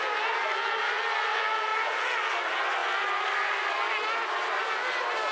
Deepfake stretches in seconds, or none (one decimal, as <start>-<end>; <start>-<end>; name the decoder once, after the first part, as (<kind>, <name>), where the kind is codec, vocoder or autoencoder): none